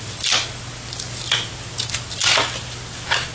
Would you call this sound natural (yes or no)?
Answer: yes